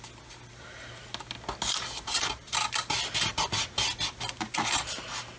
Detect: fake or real real